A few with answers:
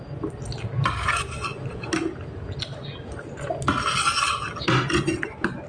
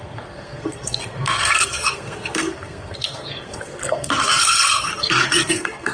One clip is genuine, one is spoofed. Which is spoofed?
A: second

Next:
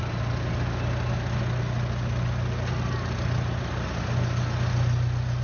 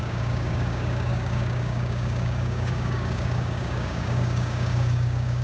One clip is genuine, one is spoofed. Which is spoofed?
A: second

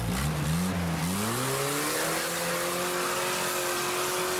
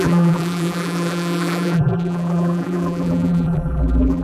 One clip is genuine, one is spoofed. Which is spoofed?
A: second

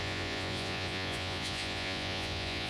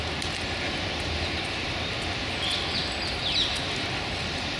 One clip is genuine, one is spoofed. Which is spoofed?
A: first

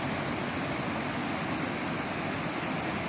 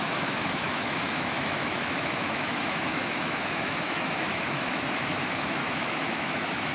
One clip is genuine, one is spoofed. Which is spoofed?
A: second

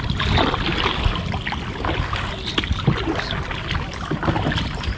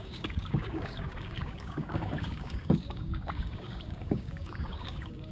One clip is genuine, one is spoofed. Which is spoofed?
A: second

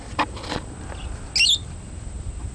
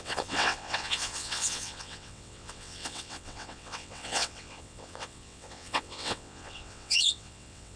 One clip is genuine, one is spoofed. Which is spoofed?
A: second